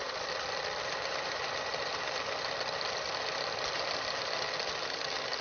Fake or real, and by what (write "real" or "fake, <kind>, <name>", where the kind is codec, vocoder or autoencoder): real